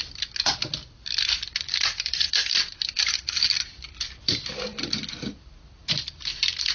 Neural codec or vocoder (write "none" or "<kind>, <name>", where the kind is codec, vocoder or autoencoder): vocoder, BigVGAN v2